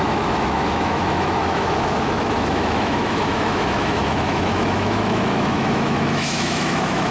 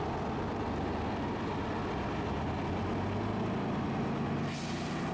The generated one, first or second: first